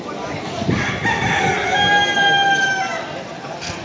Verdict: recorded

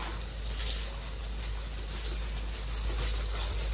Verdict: recorded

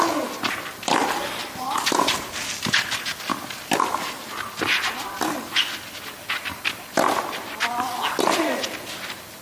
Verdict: recorded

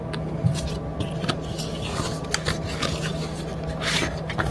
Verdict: recorded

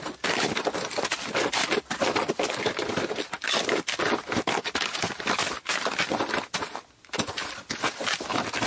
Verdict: recorded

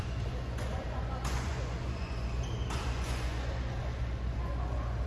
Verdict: remade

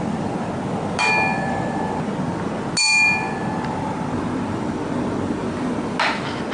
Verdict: recorded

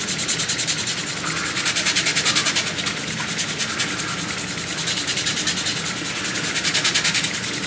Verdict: recorded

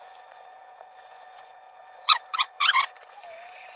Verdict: remade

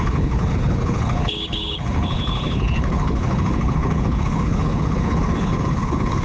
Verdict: remade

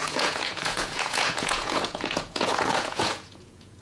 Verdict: remade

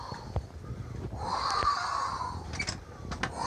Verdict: recorded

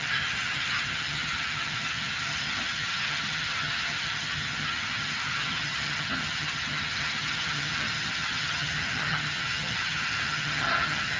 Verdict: remade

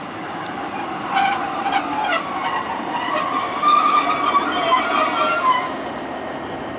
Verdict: recorded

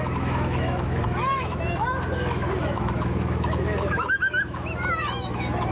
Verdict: remade